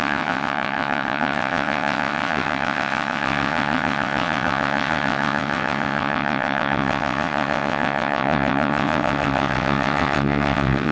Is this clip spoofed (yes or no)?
yes